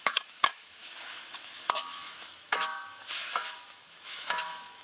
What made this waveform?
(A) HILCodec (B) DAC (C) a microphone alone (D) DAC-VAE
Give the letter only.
D